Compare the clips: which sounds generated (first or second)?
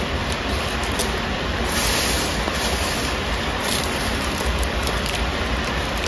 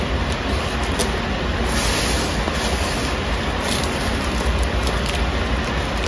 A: first